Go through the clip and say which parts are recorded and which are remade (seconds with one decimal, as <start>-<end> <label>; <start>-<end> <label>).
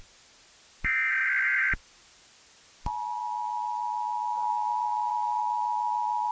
0.0-4.5 recorded; 4.5-5.4 remade; 5.4-6.3 recorded